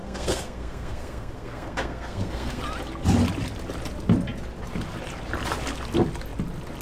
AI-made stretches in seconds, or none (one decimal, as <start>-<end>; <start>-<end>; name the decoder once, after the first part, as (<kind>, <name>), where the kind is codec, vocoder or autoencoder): 0.0-2.6 (codec, SNAC)